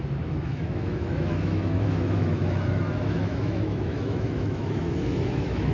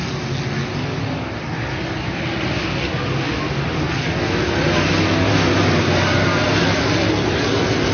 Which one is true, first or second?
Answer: second